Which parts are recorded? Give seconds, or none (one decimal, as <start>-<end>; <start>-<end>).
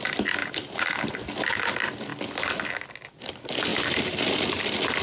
0.0-0.4; 1.2-3.7; 4.4-5.0